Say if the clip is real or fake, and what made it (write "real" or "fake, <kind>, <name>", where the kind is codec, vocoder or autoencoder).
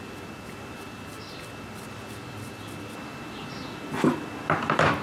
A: real